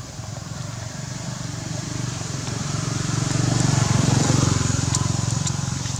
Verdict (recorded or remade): remade